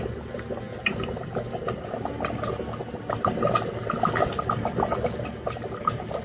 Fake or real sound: real